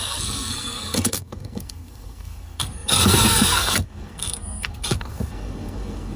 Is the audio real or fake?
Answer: fake